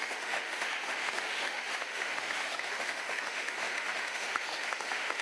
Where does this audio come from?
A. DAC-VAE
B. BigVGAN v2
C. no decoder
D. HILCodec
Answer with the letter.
A